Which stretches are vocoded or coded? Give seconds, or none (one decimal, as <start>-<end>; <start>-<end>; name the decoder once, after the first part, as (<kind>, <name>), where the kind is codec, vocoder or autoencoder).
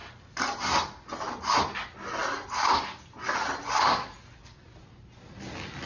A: none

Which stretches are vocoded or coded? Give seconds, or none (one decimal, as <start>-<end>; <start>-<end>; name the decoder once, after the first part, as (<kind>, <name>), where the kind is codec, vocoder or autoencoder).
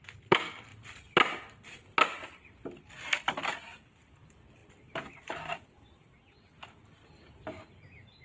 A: none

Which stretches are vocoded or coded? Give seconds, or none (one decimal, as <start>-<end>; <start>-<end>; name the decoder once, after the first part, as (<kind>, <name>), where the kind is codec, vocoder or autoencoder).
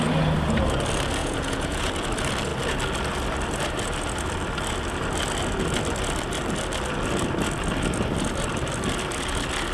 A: 1.2-1.9 (vocoder, Vocos)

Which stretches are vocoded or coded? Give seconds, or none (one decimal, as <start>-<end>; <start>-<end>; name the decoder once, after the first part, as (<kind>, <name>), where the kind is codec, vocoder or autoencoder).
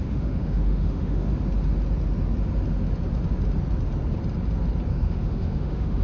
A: 0.0-1.3 (autoencoder, DAC-VAE); 4.9-6.0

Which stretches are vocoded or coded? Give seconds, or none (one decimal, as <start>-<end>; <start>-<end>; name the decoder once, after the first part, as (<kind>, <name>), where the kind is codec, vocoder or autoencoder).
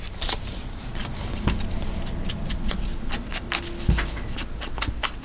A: none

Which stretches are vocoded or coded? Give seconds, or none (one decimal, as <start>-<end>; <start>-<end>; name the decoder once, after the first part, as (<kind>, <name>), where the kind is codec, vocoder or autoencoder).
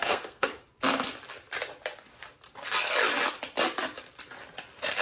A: 0.0-0.6 (codec, SNAC)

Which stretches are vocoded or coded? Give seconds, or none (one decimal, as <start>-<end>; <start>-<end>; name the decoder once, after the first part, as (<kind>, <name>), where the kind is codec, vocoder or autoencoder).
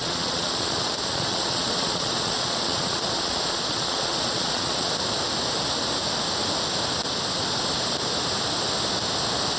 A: 0.0-4.9 (vocoder, Vocos)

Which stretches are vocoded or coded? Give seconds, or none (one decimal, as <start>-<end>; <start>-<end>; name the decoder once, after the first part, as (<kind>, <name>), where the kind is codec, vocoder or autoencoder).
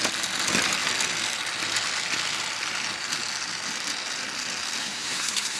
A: 4.8-5.6 (codec, SNAC)